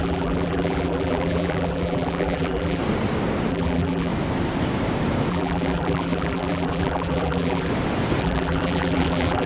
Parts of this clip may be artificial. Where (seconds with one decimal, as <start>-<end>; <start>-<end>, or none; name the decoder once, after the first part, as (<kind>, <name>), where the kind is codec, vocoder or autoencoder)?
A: 0.0-2.8 (vocoder, BigVGAN v2); 3.5-4.1; 5.3-7.7; 8.2-9.5